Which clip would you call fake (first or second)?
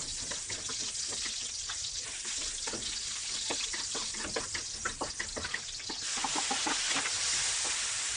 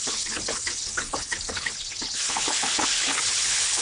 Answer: second